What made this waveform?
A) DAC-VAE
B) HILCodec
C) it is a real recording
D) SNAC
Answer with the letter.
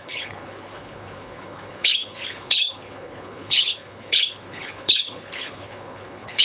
B